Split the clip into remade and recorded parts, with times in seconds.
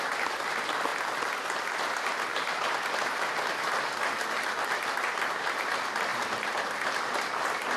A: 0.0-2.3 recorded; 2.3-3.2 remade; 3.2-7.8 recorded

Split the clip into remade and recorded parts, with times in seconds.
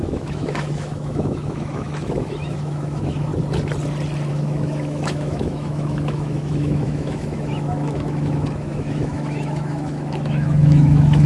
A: 0.0-3.3 remade; 3.3-4.3 recorded; 4.3-11.3 remade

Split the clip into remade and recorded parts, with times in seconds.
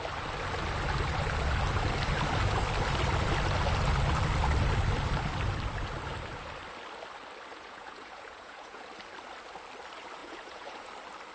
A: 0.0-7.5 recorded; 7.5-8.9 remade; 8.9-10.2 recorded; 10.2-10.9 remade; 10.9-11.3 recorded